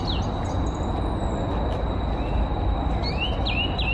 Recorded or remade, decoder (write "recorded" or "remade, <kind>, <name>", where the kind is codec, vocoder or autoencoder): recorded